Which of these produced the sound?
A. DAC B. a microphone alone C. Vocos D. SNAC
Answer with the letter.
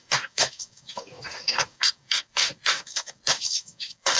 A